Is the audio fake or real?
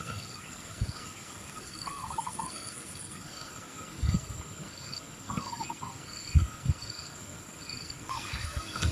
fake